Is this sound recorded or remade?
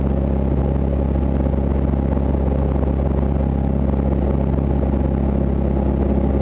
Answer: recorded